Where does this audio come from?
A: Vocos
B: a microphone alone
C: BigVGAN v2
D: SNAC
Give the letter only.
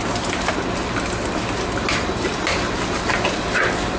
B